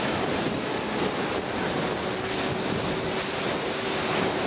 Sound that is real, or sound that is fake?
real